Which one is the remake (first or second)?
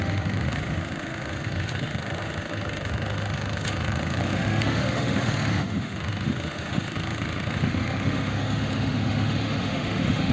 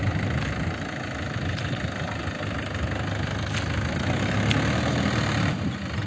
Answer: first